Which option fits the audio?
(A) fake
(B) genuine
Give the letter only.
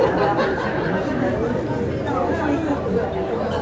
B